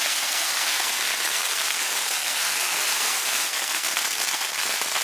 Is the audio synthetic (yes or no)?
yes